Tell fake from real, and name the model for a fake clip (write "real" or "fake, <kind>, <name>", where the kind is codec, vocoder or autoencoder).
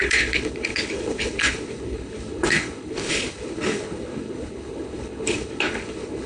fake, codec, HILCodec